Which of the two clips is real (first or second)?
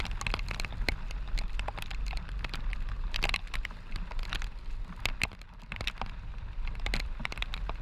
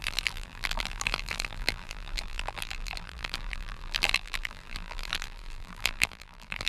first